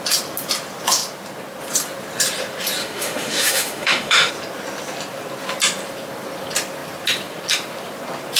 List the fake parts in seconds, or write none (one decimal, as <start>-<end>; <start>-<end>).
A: 2.8-4.3